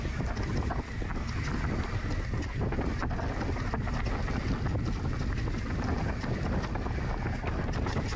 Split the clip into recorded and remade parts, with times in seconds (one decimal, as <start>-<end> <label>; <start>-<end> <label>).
0.0-8.2 recorded